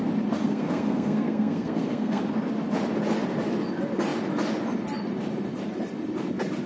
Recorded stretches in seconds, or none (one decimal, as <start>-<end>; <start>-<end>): 0.0-0.4; 2.2-6.7